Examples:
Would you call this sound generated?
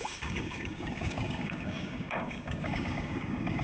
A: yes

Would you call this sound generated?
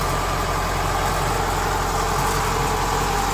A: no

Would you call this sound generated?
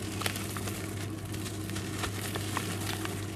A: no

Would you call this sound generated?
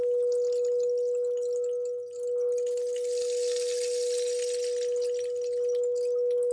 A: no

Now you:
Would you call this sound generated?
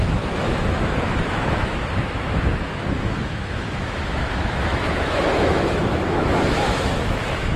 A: yes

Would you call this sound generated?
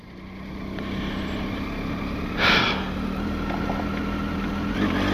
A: no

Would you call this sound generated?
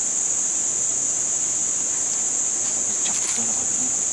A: no